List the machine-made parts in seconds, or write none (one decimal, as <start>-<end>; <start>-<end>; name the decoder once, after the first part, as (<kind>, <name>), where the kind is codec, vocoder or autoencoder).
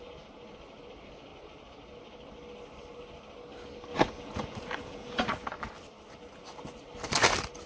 3.9-5.2 (vocoder, Vocos)